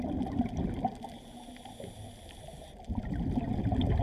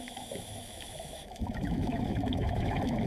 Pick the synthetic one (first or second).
second